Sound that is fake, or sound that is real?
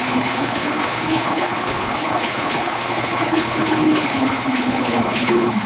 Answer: fake